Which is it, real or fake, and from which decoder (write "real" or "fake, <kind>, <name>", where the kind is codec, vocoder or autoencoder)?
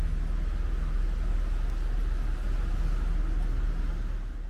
real